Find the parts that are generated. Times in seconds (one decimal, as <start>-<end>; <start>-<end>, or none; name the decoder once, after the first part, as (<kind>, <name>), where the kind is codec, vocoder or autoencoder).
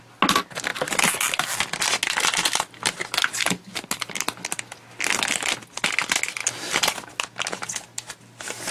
0.7-1.3 (vocoder, BigVGAN v2); 6.4-7.1